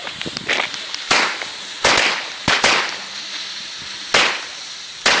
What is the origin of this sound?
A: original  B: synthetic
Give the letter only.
A